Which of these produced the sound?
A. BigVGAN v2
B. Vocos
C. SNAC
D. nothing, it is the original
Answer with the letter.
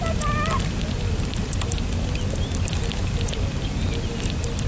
D